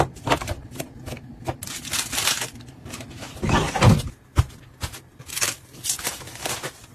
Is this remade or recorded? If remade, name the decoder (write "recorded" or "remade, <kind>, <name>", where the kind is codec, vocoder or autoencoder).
recorded